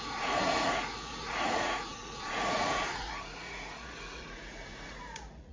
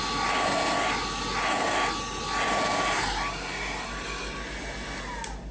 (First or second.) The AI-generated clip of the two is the first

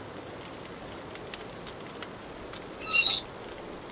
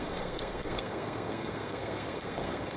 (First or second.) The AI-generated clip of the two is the second